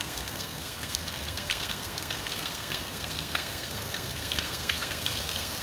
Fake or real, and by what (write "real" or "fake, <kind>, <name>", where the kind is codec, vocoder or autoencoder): fake, codec, SNAC